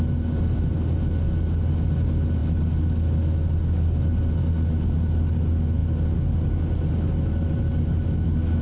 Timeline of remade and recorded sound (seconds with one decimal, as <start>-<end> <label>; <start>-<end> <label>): 0.0-8.6 recorded